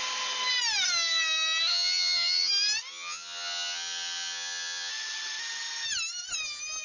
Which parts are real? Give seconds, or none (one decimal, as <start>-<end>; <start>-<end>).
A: 0.0-1.7; 2.5-2.9; 4.9-6.8